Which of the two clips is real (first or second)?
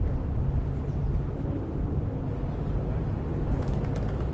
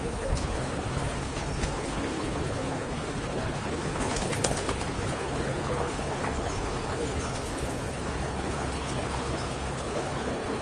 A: first